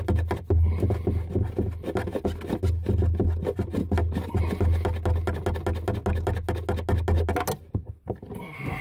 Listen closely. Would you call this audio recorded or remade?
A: recorded